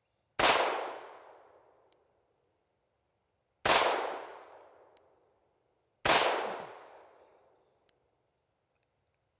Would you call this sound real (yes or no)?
yes